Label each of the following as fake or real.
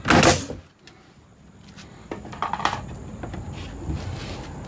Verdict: real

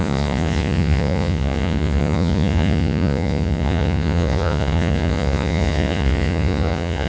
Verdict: fake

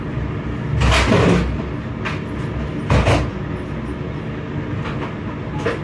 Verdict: real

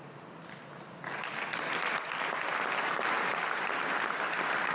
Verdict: real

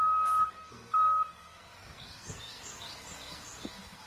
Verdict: fake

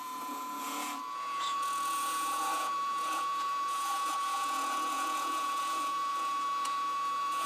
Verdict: fake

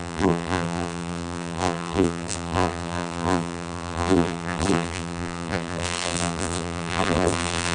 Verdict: fake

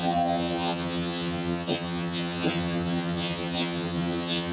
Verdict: fake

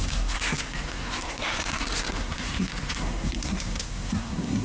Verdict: fake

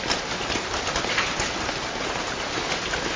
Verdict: real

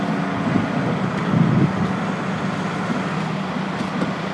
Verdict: real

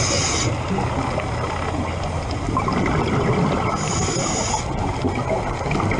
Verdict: real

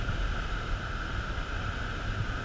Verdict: real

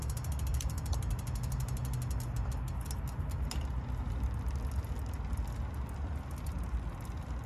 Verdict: real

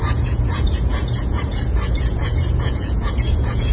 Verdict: fake